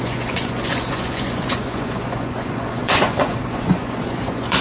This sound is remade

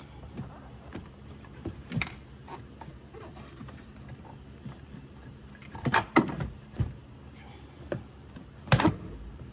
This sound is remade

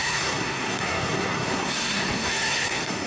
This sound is remade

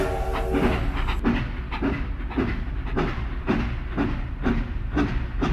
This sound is recorded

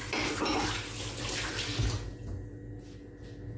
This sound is recorded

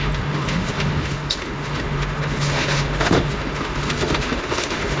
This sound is remade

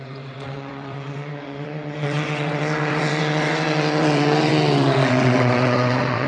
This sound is remade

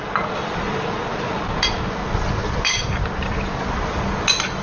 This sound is recorded